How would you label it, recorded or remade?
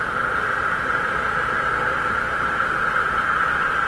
remade